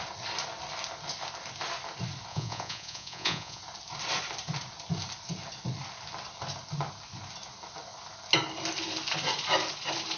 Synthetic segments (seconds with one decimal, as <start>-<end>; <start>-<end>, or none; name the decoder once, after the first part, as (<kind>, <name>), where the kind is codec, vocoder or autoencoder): 2.3-3.6 (vocoder, Vocos)